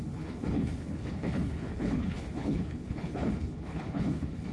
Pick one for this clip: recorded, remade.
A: remade